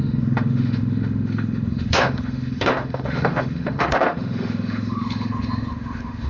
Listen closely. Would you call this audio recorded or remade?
remade